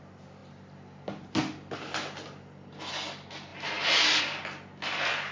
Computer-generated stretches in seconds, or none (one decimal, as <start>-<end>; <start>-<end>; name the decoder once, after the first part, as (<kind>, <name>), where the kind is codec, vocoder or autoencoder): none